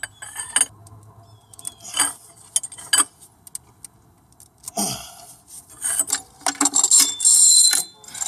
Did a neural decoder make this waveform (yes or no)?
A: no